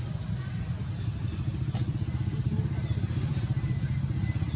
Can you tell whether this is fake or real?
fake